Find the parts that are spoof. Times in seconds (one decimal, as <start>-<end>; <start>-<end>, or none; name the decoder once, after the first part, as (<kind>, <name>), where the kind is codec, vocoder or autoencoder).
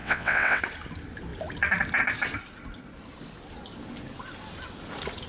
0.0-0.6 (vocoder, WaveNeXt)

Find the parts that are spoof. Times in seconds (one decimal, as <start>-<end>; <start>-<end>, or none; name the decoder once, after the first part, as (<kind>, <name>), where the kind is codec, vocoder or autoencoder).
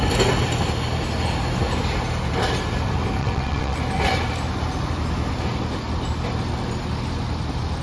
3.2-3.8 (vocoder, WaveNeXt)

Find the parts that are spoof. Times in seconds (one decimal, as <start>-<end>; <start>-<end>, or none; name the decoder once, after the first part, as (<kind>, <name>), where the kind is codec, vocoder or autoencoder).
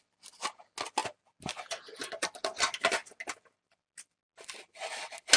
none